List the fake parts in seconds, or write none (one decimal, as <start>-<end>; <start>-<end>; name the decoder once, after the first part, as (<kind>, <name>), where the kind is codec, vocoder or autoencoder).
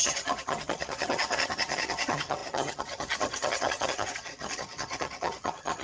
0.0-5.8 (vocoder, HiFi-GAN)